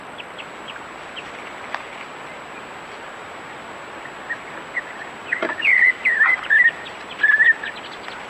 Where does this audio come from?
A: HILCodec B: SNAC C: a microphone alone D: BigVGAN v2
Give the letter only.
C